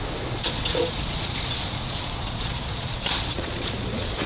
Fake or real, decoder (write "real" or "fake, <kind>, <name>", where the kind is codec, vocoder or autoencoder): fake, vocoder, Vocos